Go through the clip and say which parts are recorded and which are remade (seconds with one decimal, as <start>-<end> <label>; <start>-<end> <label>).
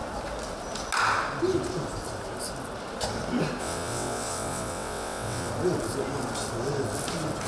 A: 0.0-3.6 recorded; 3.6-5.5 remade; 5.5-7.5 recorded